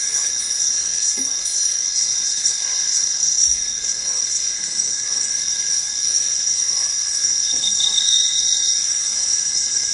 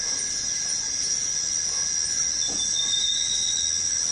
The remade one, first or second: first